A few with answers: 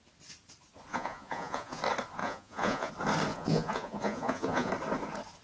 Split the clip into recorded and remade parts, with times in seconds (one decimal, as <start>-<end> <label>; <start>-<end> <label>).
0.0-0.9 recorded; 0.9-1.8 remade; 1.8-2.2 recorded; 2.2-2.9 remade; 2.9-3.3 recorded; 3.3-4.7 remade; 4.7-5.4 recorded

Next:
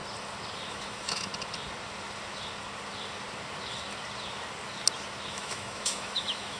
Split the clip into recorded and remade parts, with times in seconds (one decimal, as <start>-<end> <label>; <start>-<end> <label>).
0.0-0.7 recorded; 0.7-1.3 remade; 1.3-5.3 recorded; 5.3-6.6 remade

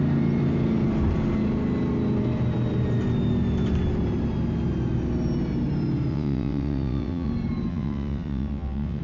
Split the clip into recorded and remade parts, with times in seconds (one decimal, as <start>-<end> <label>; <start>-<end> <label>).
0.0-6.1 recorded; 6.1-7.3 remade; 7.3-7.7 recorded; 7.7-9.0 remade

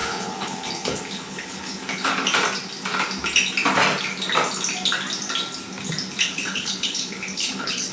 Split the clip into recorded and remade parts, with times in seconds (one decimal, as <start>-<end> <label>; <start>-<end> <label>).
0.0-2.1 remade; 2.1-6.2 recorded; 6.2-7.9 remade

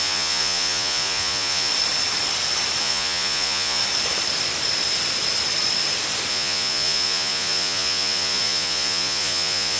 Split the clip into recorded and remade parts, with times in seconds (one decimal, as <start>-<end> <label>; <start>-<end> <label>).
0.0-1.7 remade; 1.7-2.8 recorded; 2.8-3.8 remade; 3.8-6.3 recorded; 6.3-9.8 remade

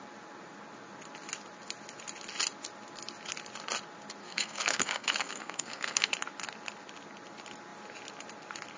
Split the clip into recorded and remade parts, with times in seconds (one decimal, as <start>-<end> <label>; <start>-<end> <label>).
0.0-4.2 recorded; 4.2-6.1 remade; 6.1-8.8 recorded

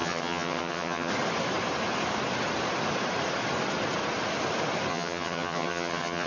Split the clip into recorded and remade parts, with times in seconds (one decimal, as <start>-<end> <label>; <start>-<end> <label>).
0.0-1.1 remade; 1.1-4.9 recorded; 4.9-6.3 remade